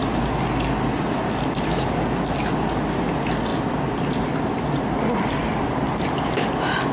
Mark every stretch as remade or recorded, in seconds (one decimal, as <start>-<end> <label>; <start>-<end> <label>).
0.0-6.9 recorded